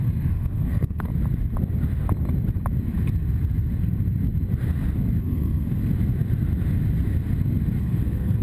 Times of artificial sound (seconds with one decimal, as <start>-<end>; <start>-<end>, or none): 0.0-1.1; 5.2-5.8; 7.8-8.4